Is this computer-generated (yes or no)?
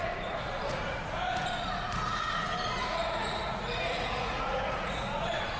yes